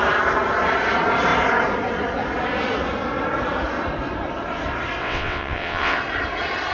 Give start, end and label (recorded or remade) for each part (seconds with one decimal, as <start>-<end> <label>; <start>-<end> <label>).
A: 0.0-5.0 recorded; 5.0-6.0 remade; 6.0-6.7 recorded